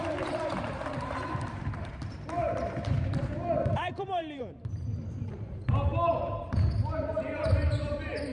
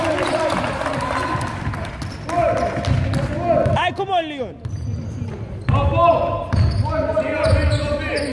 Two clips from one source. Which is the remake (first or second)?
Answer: first